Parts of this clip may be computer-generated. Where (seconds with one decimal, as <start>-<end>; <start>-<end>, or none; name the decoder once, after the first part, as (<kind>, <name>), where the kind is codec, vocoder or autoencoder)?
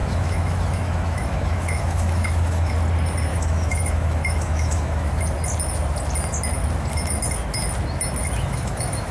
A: 0.0-2.7 (autoencoder, DAC-VAE); 3.3-5.2; 8.2-9.1